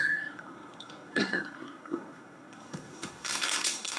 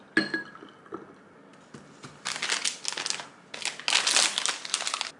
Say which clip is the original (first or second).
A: second